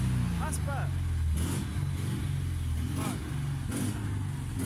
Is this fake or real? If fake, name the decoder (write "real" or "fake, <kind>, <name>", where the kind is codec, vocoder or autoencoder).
real